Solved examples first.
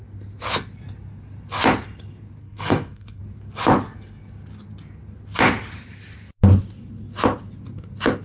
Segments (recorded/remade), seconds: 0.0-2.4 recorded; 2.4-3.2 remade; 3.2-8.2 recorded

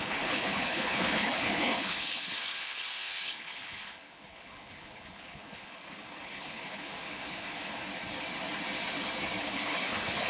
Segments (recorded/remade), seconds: 0.0-7.9 remade; 7.9-9.4 recorded; 9.4-10.3 remade

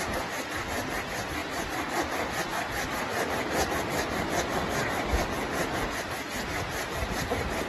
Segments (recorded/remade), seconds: 0.0-7.7 recorded

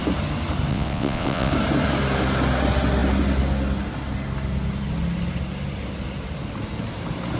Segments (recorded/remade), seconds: 0.0-0.7 recorded; 0.7-1.5 remade; 1.5-7.4 recorded

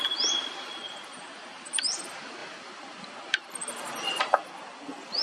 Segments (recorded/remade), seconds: 0.0-1.1 recorded; 1.1-2.0 remade; 2.0-5.2 recorded

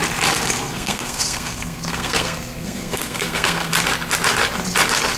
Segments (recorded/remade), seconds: 0.0-0.6 recorded; 0.6-3.7 remade; 3.7-5.2 recorded